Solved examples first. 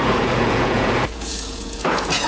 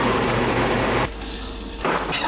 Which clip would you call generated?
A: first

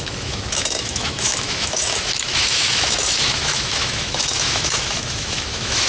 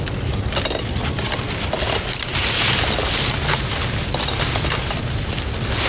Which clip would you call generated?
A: first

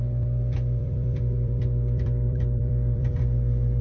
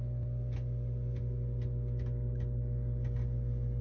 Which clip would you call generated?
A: first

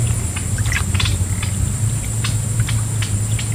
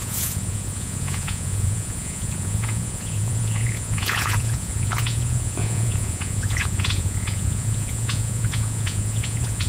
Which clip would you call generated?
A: second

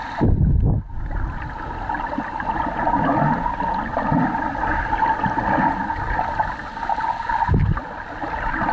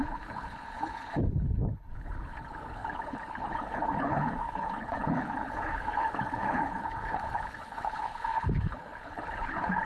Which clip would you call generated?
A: second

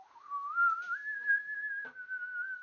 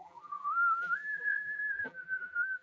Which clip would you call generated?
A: second